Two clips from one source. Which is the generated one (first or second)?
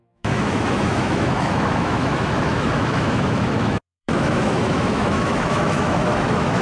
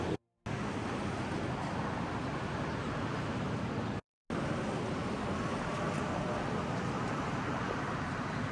first